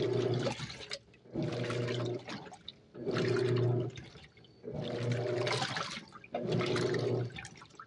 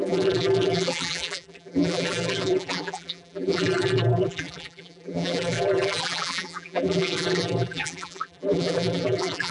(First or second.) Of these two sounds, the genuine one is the first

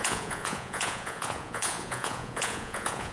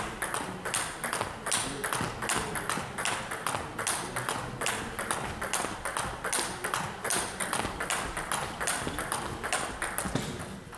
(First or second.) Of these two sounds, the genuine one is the second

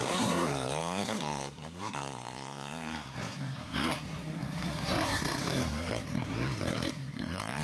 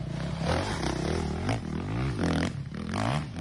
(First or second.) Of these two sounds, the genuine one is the second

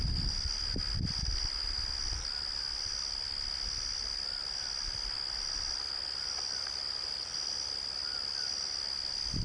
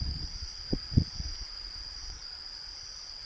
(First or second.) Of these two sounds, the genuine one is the first